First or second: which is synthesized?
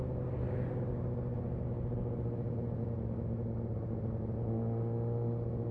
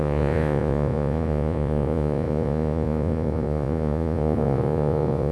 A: second